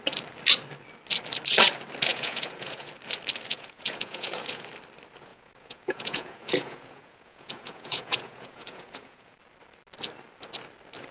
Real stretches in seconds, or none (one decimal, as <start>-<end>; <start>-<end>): 0.0-2.1; 2.9-3.5; 4.7-5.3; 9.4-11.1